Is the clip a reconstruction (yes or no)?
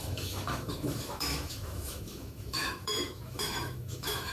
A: yes